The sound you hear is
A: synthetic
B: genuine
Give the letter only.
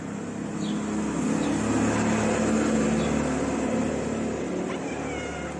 B